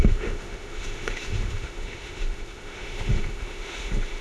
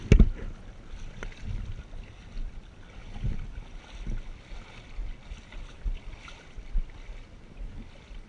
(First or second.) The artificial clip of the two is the first